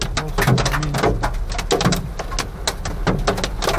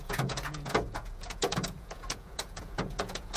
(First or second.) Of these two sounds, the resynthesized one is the second